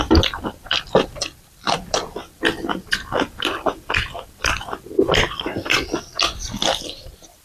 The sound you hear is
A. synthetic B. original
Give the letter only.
A